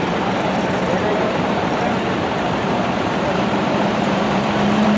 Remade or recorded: remade